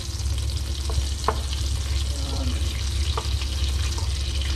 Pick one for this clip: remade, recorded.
recorded